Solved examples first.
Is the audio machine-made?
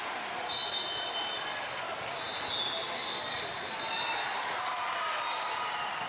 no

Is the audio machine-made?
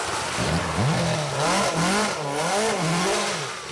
no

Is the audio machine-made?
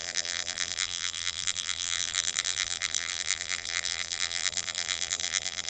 yes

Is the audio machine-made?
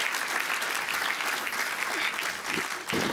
no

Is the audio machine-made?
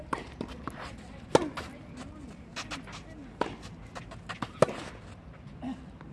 no